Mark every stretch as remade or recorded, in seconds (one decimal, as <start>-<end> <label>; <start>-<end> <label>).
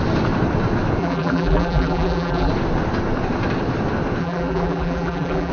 0.0-1.0 recorded; 1.0-2.5 remade; 2.5-4.2 recorded; 4.2-5.5 remade